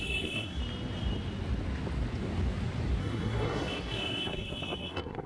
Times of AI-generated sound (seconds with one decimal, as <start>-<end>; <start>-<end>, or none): 0.0-0.6; 3.0-5.3